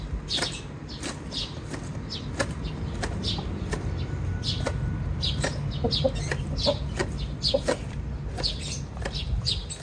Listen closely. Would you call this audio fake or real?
real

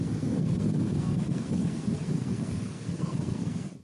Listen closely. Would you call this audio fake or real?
fake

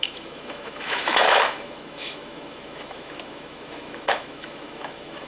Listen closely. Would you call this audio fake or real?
fake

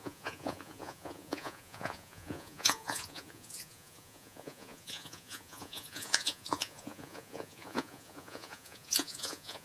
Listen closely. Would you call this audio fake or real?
fake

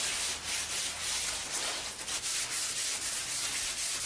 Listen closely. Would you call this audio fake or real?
real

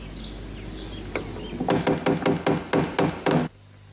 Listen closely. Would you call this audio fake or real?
real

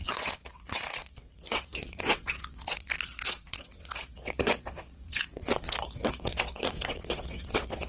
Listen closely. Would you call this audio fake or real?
fake